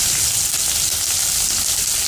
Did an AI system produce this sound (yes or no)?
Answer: no